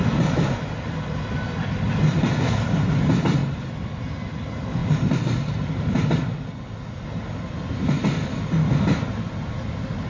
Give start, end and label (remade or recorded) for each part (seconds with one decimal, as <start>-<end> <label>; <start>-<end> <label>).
0.0-10.1 recorded